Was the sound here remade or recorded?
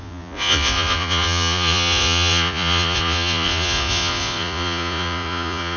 remade